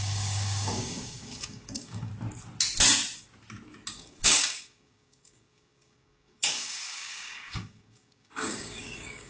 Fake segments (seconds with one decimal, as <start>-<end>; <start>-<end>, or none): 0.0-2.1; 3.9-9.3